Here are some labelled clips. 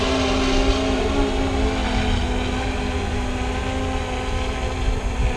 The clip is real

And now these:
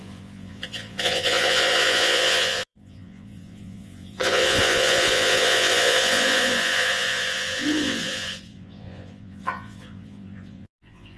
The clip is fake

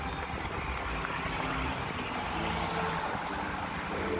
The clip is real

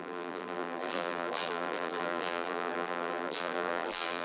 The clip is fake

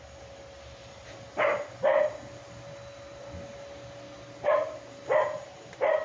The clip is fake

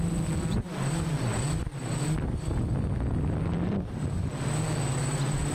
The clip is real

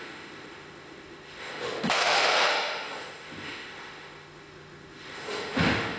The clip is fake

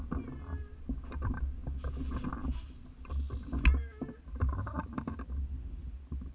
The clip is real